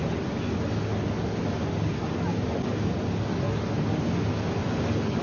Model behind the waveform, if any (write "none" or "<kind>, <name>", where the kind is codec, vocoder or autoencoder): none